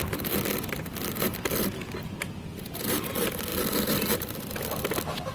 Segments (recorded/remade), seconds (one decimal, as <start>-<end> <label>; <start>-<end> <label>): 0.0-2.5 recorded; 2.5-3.1 remade; 3.1-5.3 recorded